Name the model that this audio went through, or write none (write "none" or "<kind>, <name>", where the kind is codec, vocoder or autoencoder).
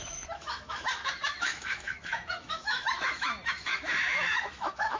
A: autoencoder, DAC-VAE